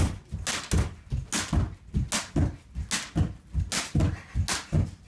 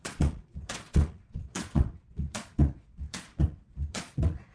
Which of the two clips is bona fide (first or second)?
first